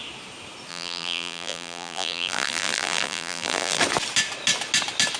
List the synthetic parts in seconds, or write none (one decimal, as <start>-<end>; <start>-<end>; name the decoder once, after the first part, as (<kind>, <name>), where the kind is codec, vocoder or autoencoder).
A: 0.7-3.8 (vocoder, BigVGAN v2)